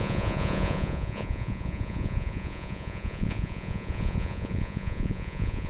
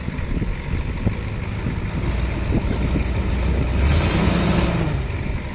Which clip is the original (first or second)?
second